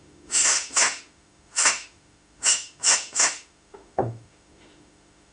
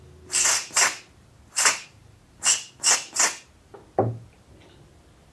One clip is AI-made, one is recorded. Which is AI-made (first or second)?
first